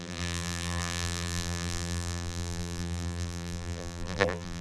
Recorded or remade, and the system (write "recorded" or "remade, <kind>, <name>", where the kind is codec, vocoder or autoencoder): remade, vocoder, BigVGAN v2